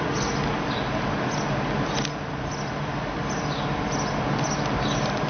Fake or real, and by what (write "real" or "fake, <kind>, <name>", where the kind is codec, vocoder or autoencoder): real